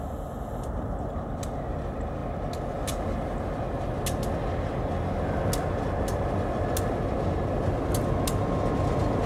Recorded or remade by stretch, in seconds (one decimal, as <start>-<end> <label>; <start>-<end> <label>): 0.0-9.3 recorded